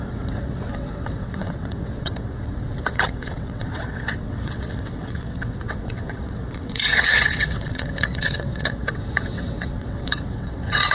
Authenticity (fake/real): fake